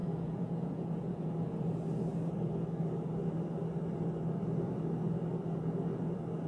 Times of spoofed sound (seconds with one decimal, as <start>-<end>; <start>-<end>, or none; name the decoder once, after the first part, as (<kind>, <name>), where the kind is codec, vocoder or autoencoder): 0.0-1.3 (vocoder, Vocos)